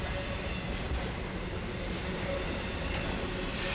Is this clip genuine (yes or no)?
yes